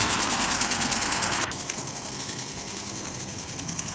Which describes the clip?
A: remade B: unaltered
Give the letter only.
A